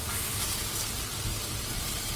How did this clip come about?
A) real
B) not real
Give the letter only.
A